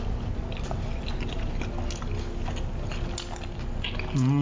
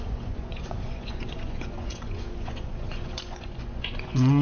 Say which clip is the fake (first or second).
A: second